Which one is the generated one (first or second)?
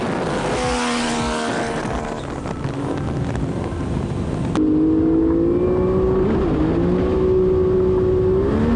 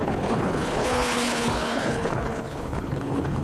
second